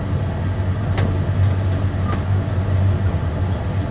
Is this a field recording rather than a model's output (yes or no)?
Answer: yes